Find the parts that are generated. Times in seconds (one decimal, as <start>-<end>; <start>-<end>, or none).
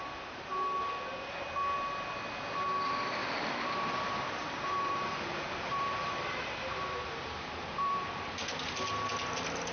3.2-8.3